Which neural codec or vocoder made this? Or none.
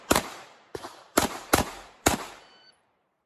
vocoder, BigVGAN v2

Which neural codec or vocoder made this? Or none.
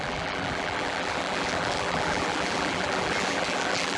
vocoder, BigVGAN v2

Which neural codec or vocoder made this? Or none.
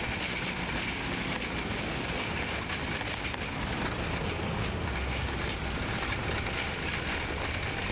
none